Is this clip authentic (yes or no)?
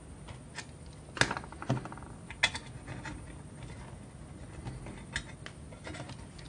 yes